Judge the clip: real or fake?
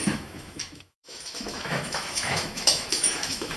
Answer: fake